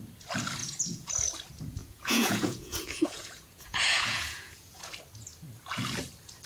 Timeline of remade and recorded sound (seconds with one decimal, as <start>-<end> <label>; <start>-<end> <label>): 0.0-0.6 recorded; 0.6-1.1 remade; 1.1-1.8 recorded; 1.8-4.9 remade; 4.9-6.5 recorded